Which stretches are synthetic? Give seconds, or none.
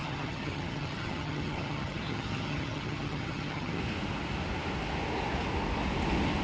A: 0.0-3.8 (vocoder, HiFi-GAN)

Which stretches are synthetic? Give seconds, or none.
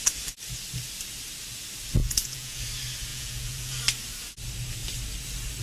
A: 2.0-2.6 (vocoder, Vocos); 3.1-3.8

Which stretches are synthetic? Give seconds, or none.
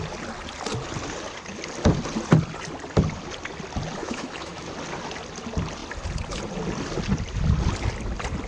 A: 4.0-4.7 (autoencoder, DAC-VAE)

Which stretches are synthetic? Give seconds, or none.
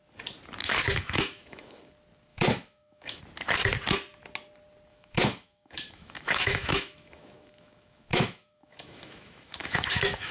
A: 0.6-1.9 (autoencoder, DAC-VAE); 2.3-3.2; 4.9-10.3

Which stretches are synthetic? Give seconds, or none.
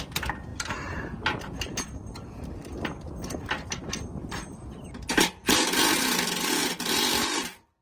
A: none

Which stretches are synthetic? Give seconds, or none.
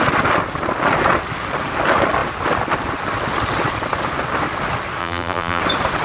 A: 5.0-5.6 (vocoder, BigVGAN v2)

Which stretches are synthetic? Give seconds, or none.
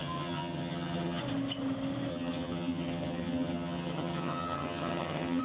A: 0.0-1.2 (vocoder, HiFi-GAN); 2.1-5.4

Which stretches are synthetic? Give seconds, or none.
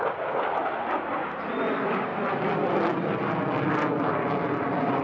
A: none